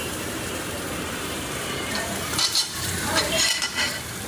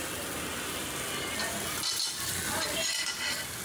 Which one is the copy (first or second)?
first